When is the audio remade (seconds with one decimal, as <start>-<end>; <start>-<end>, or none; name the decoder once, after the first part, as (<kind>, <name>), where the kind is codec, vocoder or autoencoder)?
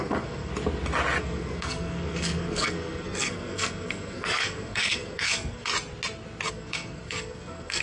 0.0-0.5 (codec, SNAC); 1.2-5.7; 6.5-7.8